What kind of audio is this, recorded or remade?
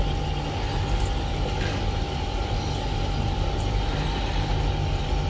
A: recorded